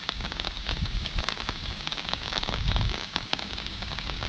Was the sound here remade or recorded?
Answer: remade